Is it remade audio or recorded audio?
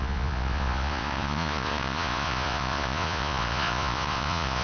remade